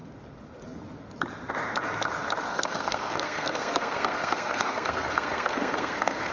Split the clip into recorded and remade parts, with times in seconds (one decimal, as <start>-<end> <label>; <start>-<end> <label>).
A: 0.0-2.5 recorded; 2.5-6.3 remade